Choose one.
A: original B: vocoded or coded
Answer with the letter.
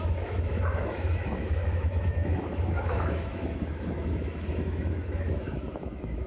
B